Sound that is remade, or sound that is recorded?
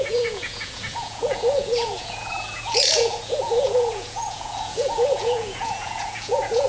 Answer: remade